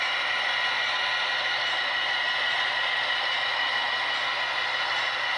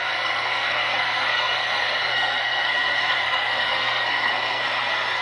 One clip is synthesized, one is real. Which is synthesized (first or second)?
second